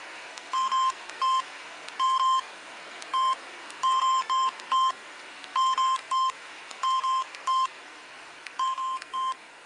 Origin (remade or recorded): remade